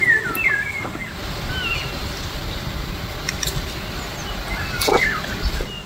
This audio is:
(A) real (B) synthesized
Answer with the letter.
A